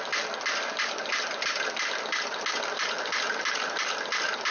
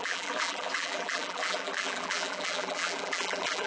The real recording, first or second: first